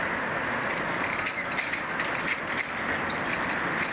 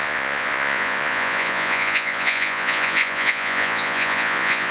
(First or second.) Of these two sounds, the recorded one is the first